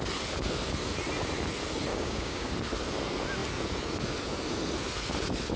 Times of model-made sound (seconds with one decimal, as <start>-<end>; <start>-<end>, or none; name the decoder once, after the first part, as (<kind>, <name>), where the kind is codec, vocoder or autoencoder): 1.9-2.5 (codec, DAC)